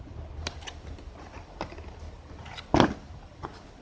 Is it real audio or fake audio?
fake